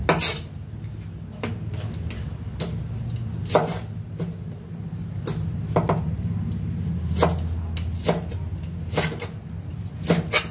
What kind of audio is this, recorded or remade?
recorded